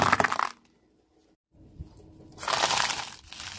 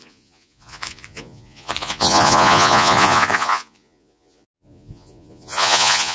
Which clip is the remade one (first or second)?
second